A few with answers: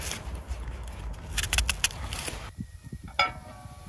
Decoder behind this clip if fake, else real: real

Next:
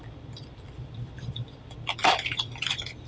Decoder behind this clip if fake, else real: fake, vocoder, BigVGAN v2